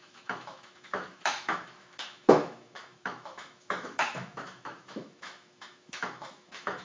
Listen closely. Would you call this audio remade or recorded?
remade